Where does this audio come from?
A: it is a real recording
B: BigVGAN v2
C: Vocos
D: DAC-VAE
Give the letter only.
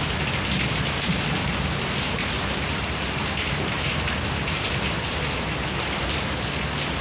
A